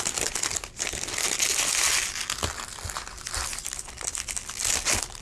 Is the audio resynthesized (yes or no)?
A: no